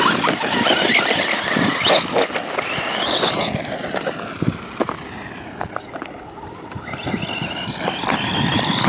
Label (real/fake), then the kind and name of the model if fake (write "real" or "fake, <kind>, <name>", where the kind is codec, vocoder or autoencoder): real